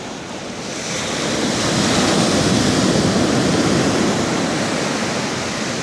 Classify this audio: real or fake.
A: real